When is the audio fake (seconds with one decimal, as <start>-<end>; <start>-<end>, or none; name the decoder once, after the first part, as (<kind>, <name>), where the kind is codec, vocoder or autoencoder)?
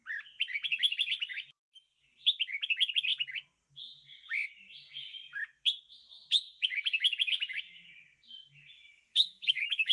8.7-9.9 (autoencoder, DAC-VAE)